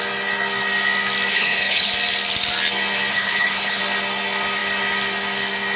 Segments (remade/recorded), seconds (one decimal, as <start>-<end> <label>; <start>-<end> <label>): 0.0-1.3 recorded; 1.3-1.9 remade; 1.9-3.1 recorded; 3.1-3.8 remade; 3.8-5.8 recorded